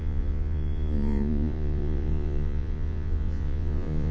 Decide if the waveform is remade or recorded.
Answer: remade